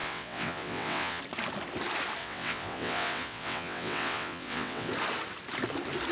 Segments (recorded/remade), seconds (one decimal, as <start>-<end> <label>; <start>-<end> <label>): 0.0-1.2 remade; 1.2-2.2 recorded; 2.2-4.9 remade; 4.9-6.1 recorded